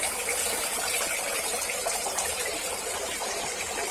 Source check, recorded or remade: remade